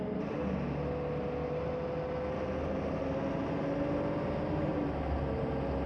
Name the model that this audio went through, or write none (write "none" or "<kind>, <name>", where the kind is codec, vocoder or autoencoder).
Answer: none